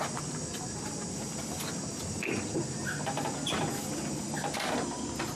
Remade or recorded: recorded